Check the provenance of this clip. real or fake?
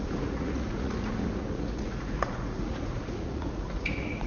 fake